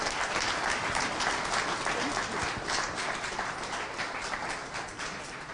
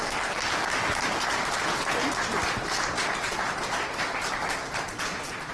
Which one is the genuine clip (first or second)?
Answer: first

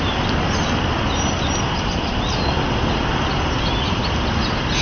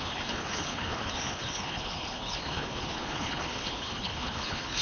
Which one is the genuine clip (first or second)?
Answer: first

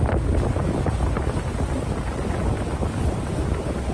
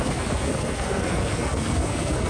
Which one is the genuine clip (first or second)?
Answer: first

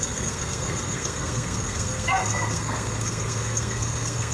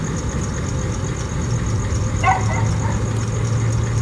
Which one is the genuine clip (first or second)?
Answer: second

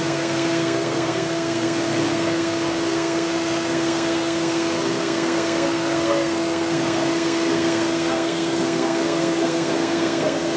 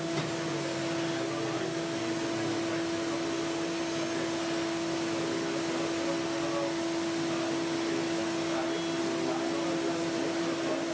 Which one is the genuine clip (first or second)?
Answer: second